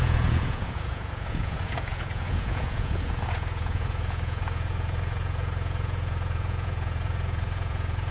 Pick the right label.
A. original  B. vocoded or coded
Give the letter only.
B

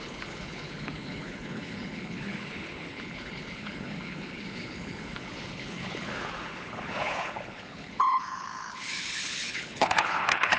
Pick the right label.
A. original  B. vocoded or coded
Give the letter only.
B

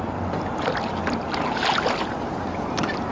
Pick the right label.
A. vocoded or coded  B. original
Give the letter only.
B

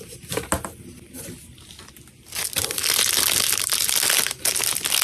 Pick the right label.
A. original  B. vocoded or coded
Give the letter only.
A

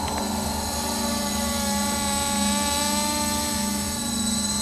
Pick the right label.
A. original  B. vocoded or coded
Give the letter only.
A